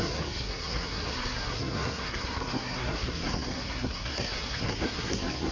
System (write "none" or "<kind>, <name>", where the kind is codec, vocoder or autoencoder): codec, SNAC